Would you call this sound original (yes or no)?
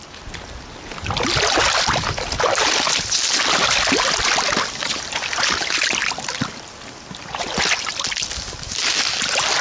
yes